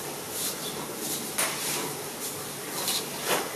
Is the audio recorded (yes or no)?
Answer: yes